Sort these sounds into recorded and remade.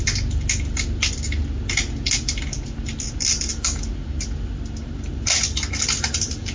recorded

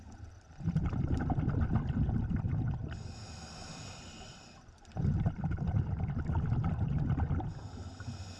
recorded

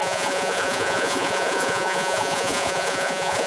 remade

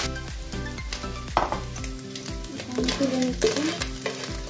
recorded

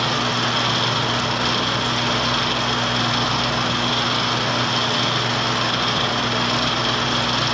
recorded